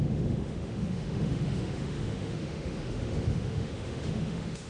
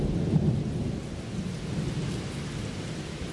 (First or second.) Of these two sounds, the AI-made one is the first